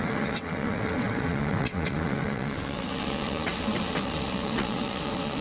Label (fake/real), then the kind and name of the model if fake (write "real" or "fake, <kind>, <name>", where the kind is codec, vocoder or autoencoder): fake, vocoder, WaveNeXt